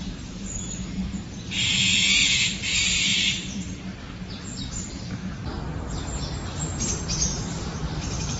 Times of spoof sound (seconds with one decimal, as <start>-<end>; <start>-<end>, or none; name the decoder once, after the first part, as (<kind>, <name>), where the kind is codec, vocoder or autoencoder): 0.0-5.2 (vocoder, BigVGAN v2); 6.2-8.4